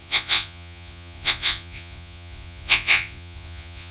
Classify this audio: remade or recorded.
remade